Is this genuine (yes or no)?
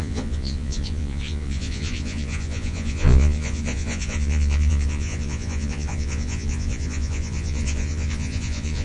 no